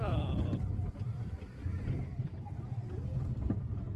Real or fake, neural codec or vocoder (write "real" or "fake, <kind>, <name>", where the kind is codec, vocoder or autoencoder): fake, vocoder, BigVGAN v2